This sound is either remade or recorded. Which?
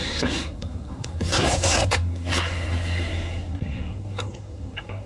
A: remade